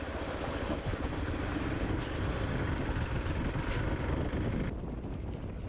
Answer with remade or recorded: recorded